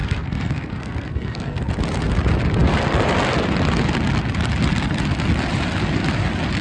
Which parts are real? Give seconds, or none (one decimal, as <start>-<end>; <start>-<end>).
1.7-6.6